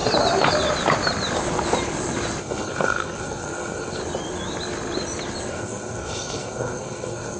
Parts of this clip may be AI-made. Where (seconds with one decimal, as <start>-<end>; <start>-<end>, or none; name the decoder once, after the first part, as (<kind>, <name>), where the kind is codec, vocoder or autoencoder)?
2.4-4.0 (codec, SNAC); 5.5-7.4